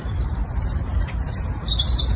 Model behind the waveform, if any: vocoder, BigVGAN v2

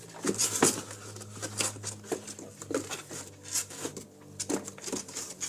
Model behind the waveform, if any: none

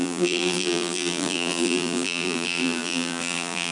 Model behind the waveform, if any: vocoder, BigVGAN v2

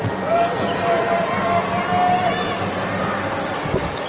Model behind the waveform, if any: none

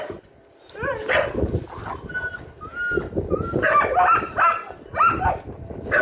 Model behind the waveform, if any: none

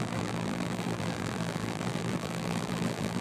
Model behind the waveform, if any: vocoder, BigVGAN v2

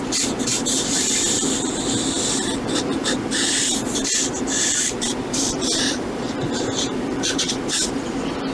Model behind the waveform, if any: vocoder, BigVGAN v2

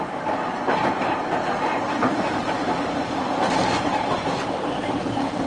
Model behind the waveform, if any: vocoder, BigVGAN v2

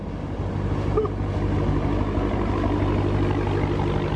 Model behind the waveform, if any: none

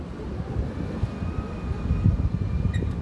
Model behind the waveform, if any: none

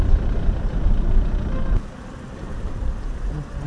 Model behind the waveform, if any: none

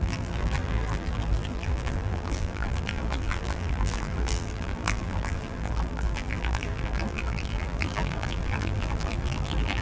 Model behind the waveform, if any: vocoder, BigVGAN v2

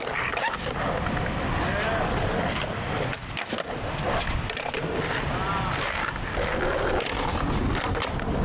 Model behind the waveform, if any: none